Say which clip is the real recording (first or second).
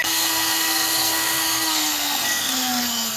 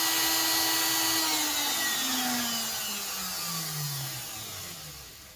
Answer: second